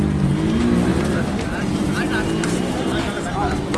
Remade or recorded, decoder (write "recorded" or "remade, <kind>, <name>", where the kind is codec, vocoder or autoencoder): recorded